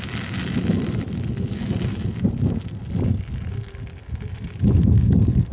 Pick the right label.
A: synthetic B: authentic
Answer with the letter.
B